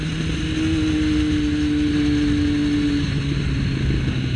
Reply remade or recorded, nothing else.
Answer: recorded